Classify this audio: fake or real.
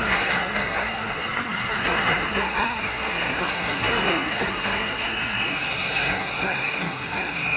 fake